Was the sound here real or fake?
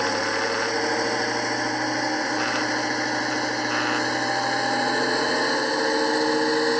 real